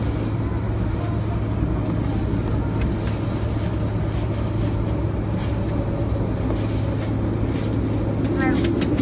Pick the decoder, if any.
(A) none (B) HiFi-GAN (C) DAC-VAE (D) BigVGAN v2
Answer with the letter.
A